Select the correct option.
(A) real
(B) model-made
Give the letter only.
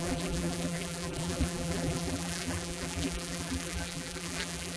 B